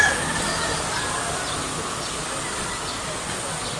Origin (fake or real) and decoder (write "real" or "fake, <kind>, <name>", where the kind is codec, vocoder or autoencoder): real